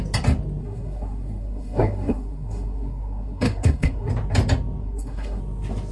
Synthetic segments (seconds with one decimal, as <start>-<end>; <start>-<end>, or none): 0.6-4.1; 4.8-5.4